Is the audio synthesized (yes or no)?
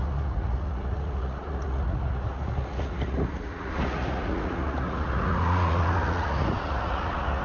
yes